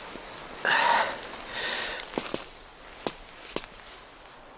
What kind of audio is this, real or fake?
real